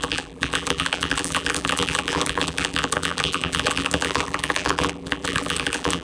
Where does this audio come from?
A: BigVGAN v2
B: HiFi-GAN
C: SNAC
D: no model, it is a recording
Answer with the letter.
A